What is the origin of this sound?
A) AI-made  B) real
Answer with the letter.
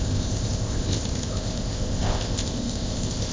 A